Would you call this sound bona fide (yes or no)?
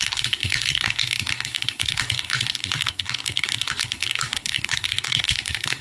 no